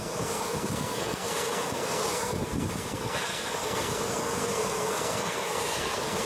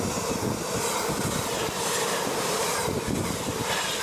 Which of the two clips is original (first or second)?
second